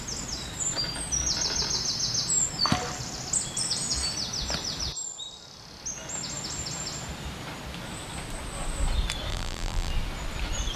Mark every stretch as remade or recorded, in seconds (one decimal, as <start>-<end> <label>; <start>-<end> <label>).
0.0-9.3 recorded; 9.3-9.9 remade; 9.9-10.8 recorded